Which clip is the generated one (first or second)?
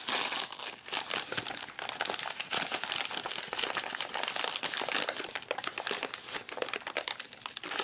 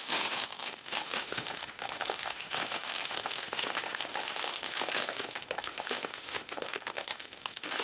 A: second